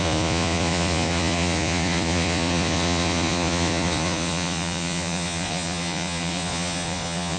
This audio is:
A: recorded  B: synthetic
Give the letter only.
B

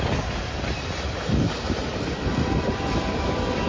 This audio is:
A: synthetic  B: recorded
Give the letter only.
B